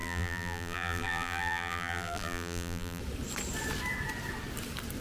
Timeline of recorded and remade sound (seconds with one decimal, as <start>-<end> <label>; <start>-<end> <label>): 0.0-3.0 remade; 3.0-5.0 recorded